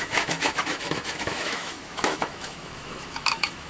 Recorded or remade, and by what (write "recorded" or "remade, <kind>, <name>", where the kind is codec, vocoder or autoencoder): remade, autoencoder, DAC-VAE